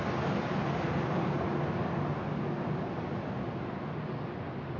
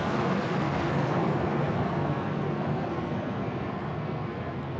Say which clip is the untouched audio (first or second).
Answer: first